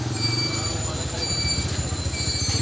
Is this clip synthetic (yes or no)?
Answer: no